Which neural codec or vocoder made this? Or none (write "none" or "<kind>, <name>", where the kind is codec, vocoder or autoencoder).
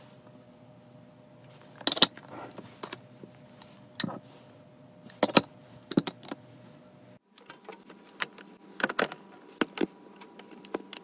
none